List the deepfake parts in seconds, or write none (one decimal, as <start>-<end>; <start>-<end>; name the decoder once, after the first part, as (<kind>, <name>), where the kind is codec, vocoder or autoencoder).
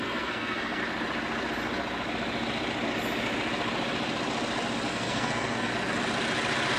0.0-0.8 (codec, SNAC); 4.9-5.7